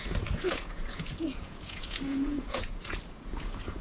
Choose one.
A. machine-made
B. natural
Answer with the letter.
A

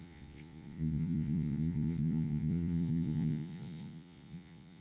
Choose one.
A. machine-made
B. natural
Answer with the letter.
A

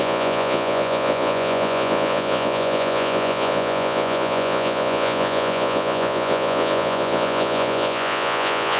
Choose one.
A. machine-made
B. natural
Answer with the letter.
A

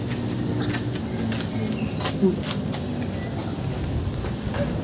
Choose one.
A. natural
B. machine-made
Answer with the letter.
A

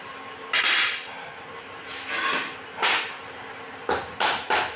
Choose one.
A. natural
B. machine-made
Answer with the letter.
A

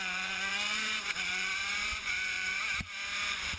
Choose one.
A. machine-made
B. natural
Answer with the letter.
A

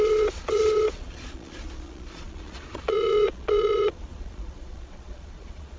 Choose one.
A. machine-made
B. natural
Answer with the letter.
A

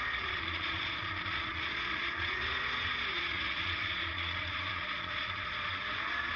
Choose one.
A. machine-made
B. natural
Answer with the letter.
A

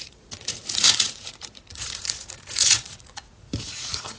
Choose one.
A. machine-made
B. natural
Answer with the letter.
A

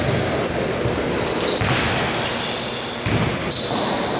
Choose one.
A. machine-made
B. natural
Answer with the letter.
B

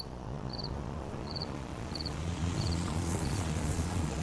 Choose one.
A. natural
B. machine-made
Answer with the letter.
B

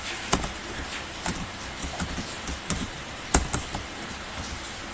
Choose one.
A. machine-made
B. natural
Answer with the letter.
B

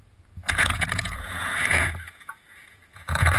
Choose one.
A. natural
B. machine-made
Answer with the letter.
B